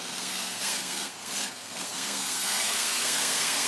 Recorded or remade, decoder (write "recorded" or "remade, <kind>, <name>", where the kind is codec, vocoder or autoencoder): remade, codec, SNAC